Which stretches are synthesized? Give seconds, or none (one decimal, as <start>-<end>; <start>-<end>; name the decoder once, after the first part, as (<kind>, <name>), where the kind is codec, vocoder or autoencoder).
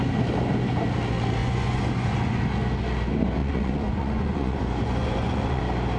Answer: 1.4-2.4 (vocoder, Vocos); 3.4-5.6